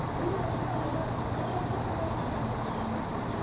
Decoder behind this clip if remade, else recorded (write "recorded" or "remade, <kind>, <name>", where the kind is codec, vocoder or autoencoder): recorded